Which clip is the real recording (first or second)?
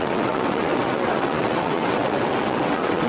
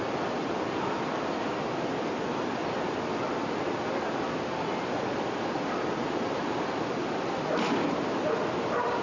second